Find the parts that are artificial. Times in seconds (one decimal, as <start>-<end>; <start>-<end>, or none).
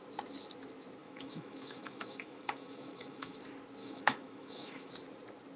1.0-3.4; 3.8-4.9